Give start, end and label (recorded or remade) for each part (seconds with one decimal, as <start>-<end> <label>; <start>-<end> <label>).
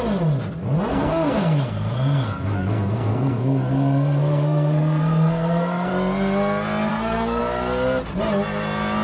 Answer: 0.0-0.9 recorded; 0.9-5.9 remade; 5.9-6.9 recorded; 6.9-7.4 remade; 7.4-9.0 recorded